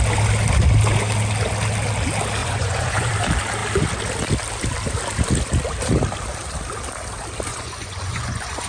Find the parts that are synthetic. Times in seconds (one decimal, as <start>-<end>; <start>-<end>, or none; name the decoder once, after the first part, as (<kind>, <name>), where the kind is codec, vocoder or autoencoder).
2.4-3.1 (vocoder, Vocos); 7.5-8.7